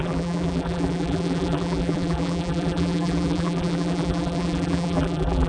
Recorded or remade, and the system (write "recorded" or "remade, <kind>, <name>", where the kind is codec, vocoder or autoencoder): remade, vocoder, BigVGAN v2